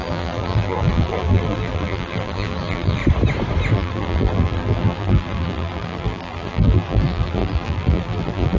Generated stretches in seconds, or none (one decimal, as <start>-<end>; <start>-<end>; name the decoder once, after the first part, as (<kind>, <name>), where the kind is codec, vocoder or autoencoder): 0.0-3.0 (vocoder, BigVGAN v2); 3.7-8.6